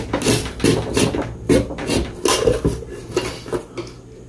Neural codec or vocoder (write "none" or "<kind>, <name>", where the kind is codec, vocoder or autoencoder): none